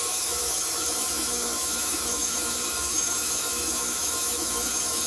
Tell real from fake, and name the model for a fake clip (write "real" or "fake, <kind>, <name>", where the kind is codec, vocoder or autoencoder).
fake, autoencoder, DAC-VAE